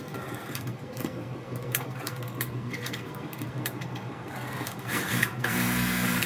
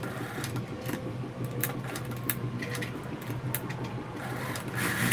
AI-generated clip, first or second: first